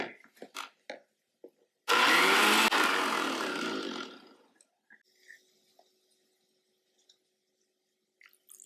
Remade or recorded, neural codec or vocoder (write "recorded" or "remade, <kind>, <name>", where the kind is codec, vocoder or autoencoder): recorded